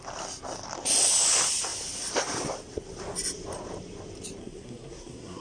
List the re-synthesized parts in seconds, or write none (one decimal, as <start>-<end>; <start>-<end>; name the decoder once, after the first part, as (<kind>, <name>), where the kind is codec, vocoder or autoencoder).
4.4-5.4 (codec, SNAC)